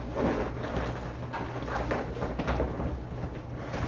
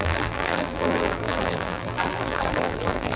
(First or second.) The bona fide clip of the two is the first